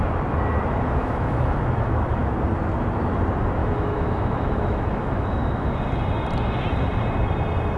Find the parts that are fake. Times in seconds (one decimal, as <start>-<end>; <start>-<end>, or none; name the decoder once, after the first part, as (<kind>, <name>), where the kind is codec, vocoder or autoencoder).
1.0-2.2 (autoencoder, DAC-VAE); 3.6-5.8